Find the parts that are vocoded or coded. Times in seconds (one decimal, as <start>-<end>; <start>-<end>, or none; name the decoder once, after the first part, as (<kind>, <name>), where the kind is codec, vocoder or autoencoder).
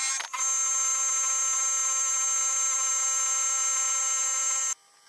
none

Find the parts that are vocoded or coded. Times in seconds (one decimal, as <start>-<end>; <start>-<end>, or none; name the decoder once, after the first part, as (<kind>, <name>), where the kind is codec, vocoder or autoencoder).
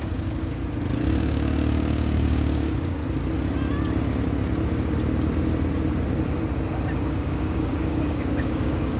0.0-0.6 (codec, DAC); 1.2-3.0; 7.1-9.0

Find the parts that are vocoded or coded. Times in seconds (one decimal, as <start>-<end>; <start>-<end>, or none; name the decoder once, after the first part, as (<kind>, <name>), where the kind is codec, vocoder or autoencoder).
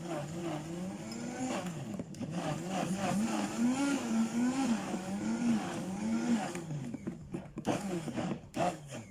0.0-0.4 (codec, DAC); 1.4-3.0; 3.8-9.1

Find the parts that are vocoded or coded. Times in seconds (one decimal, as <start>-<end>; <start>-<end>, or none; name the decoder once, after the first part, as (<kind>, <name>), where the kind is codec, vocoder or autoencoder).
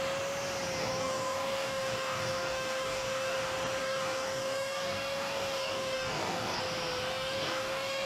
0.8-3.4 (codec, DAC); 3.8-6.6; 7.1-8.1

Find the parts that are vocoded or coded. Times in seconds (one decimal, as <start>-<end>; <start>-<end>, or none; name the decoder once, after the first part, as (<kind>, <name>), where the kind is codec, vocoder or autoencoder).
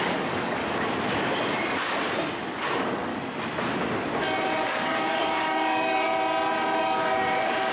0.0-0.6 (codec, DAC); 2.6-3.1; 4.6-6.1; 6.8-7.7